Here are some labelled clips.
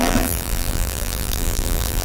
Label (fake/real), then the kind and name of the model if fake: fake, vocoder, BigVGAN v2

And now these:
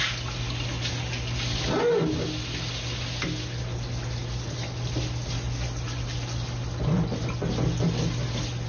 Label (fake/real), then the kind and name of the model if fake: real